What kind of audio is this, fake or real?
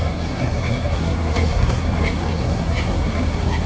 fake